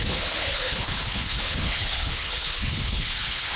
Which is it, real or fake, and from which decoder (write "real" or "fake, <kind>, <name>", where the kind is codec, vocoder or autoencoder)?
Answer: fake, codec, HILCodec